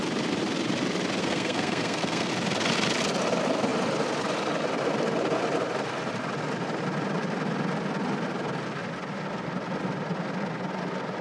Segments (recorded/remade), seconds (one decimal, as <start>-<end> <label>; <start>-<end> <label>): 0.0-1.2 recorded; 1.2-2.3 remade; 2.3-11.2 recorded